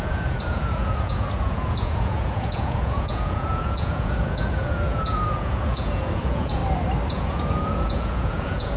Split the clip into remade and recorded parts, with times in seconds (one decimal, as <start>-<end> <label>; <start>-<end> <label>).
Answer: 0.0-6.6 remade; 6.6-7.1 recorded; 7.1-8.8 remade